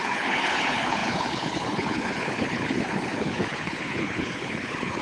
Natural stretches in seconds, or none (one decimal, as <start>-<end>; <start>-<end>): none